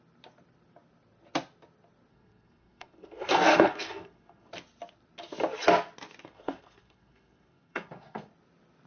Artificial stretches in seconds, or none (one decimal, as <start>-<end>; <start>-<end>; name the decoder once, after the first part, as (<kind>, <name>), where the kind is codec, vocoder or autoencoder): 2.1-4.5 (codec, SNAC); 6.2-8.3